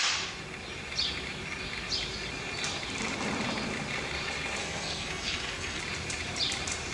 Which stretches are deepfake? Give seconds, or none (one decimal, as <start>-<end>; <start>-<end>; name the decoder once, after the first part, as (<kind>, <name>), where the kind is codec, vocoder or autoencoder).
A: 4.6-5.8 (codec, SNAC)